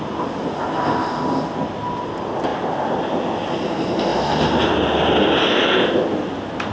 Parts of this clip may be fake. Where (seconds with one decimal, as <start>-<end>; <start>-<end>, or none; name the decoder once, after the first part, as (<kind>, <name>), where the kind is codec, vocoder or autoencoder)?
none